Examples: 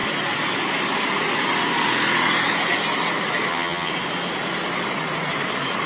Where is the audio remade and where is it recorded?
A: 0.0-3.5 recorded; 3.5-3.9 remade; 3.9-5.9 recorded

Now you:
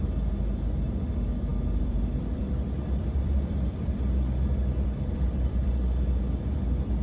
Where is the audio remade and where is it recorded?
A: 0.0-1.5 recorded; 1.5-5.7 remade; 5.7-7.0 recorded

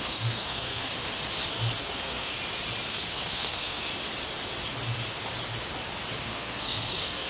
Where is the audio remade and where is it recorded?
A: 0.0-0.9 remade; 0.9-1.8 recorded; 1.8-2.3 remade; 2.3-2.9 recorded; 2.9-3.9 remade; 3.9-6.2 recorded; 6.2-7.3 remade